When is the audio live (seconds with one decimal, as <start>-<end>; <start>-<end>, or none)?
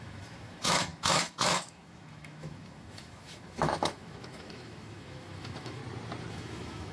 5.8-6.3